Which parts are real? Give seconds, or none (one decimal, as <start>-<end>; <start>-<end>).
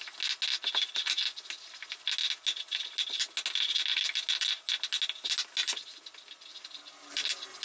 0.0-7.6